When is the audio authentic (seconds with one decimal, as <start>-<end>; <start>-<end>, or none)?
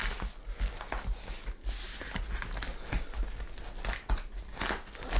0.0-5.2